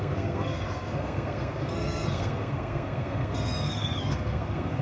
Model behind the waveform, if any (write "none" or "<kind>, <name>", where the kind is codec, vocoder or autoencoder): codec, SNAC